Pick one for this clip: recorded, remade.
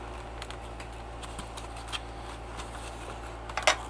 recorded